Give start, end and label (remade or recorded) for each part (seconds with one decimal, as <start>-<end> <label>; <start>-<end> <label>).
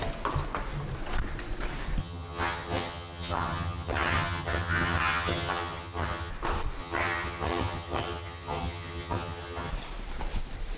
0.0-2.0 recorded; 2.0-6.3 remade; 6.3-6.8 recorded; 6.8-9.7 remade; 9.7-10.8 recorded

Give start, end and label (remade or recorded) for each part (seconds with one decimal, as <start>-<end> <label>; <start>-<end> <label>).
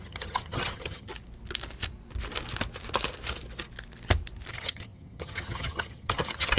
0.0-1.1 remade; 1.1-4.5 recorded; 4.5-6.6 remade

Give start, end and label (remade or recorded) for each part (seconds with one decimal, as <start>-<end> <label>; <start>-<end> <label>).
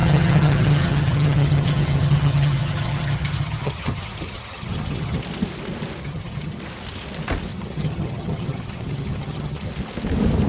0.0-5.2 remade; 5.2-6.0 recorded; 6.0-6.6 remade; 6.6-7.5 recorded; 7.5-9.7 remade; 9.7-10.5 recorded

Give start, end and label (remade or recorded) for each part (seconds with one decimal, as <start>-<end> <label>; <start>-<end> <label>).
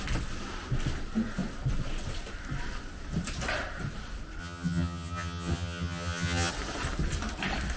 0.0-4.4 recorded; 4.4-6.5 remade; 6.5-7.8 recorded